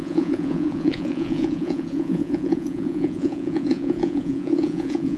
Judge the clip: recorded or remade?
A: remade